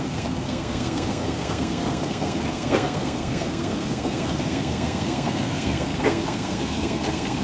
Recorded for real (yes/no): no